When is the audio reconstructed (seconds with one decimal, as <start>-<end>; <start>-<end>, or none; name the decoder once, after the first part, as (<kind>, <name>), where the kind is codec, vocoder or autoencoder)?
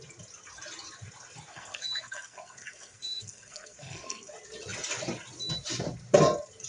1.5-4.3 (codec, SNAC)